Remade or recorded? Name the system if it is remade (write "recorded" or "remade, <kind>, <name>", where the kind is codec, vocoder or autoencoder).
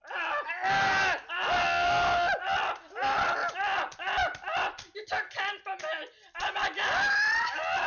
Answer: recorded